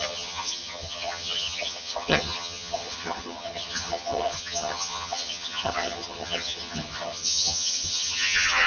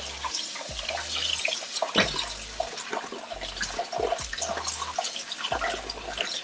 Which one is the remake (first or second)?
first